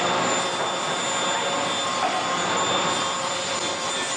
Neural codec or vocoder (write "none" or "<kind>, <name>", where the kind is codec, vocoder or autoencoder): none